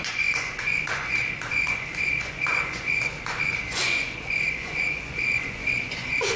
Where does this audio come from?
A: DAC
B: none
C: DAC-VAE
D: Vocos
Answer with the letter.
D